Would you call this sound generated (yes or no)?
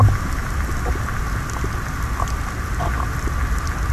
no